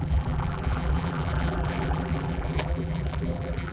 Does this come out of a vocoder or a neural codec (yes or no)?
yes